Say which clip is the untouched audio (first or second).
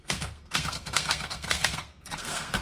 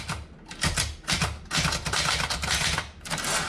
second